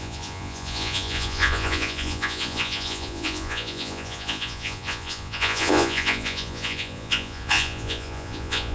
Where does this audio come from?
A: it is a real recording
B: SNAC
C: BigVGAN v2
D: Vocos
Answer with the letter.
D